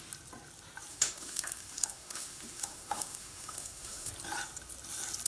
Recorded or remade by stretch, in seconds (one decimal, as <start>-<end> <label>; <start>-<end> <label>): 0.0-0.9 recorded; 0.9-4.1 remade; 4.1-5.3 recorded